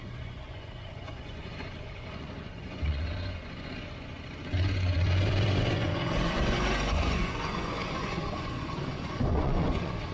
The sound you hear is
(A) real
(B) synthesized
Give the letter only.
B